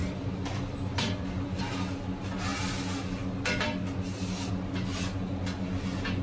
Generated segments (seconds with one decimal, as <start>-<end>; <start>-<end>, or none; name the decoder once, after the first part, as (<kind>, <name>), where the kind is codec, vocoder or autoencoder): 0.0-1.6 (vocoder, BigVGAN v2)